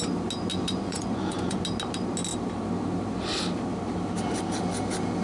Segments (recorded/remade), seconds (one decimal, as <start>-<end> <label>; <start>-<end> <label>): 0.0-0.5 recorded; 0.5-1.6 remade; 1.6-5.2 recorded

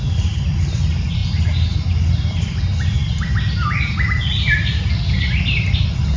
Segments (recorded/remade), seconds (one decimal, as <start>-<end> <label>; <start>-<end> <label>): 0.0-6.2 recorded